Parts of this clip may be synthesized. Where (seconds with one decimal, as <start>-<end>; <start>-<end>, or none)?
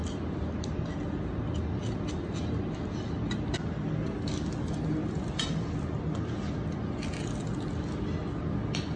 none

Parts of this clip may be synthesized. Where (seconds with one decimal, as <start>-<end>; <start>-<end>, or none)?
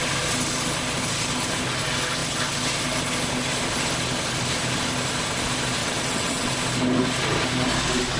5.8-6.5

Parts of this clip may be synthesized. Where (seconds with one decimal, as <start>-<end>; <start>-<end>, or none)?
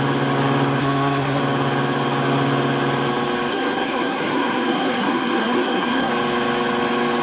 0.8-1.4; 3.5-6.1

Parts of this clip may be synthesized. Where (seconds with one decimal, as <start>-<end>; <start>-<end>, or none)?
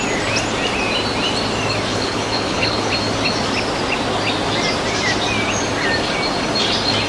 1.9-2.9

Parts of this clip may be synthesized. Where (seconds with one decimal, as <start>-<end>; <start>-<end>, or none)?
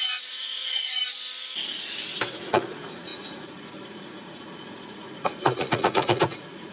0.0-1.0; 2.3-6.7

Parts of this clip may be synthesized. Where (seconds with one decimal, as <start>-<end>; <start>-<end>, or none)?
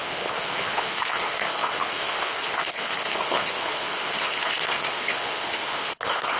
0.0-6.4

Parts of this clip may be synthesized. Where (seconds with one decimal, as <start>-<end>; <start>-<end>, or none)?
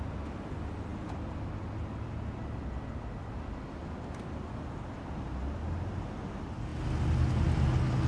none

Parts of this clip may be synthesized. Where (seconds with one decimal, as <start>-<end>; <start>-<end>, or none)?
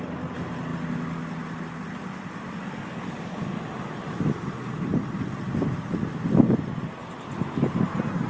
none